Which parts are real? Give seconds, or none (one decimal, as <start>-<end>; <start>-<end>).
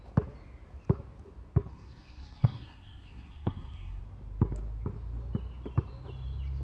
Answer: 0.0-1.7; 4.0-6.6